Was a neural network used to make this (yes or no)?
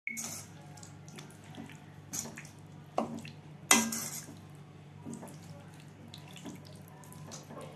no